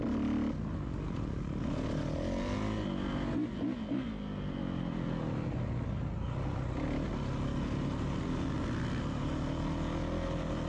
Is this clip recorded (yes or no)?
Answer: yes